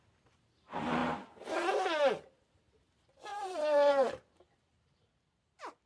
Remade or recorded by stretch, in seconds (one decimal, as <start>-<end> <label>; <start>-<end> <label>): 0.0-3.3 recorded; 3.3-4.1 remade; 4.1-5.9 recorded